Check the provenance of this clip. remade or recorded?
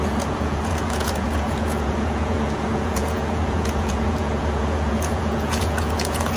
remade